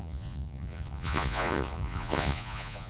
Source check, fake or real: fake